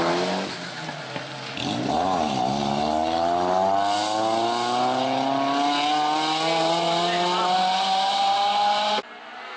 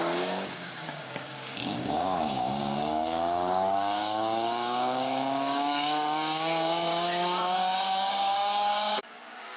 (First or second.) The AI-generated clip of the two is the second